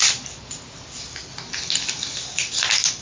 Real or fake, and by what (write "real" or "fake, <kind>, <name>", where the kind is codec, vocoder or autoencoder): real